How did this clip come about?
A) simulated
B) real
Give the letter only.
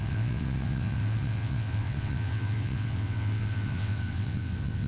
A